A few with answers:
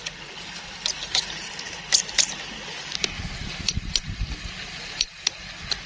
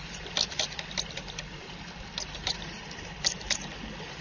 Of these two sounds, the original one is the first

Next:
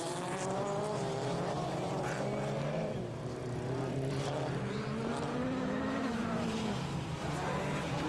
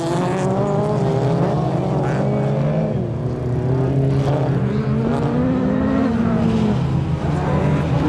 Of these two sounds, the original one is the second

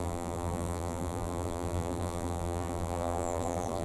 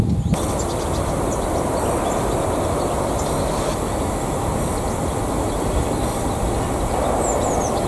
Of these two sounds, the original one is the second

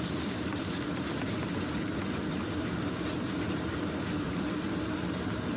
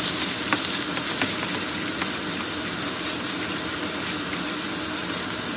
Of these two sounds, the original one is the second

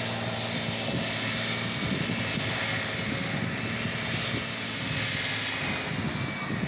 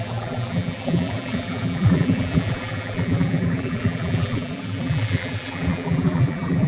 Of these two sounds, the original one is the first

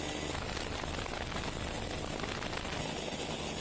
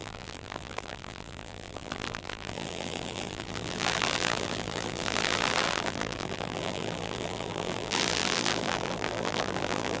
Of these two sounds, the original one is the first